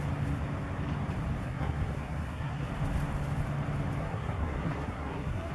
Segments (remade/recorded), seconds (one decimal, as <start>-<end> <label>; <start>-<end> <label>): 0.0-1.4 recorded; 1.4-2.7 remade; 2.7-4.0 recorded; 4.0-5.5 remade